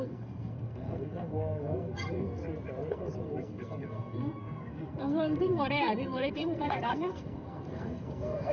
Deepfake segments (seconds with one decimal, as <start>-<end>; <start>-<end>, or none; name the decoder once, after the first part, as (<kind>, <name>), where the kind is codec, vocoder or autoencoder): 0.0-2.4 (codec, SNAC); 2.9-8.5